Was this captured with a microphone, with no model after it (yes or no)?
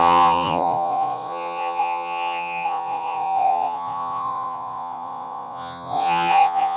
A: no